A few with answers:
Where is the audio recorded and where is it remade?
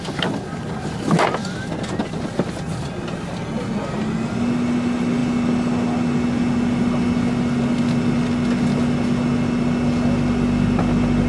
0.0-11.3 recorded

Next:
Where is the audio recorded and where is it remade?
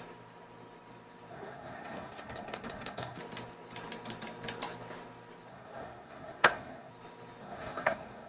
0.0-1.3 recorded; 1.3-3.2 remade; 3.2-5.5 recorded; 5.5-6.9 remade; 6.9-7.4 recorded; 7.4-8.3 remade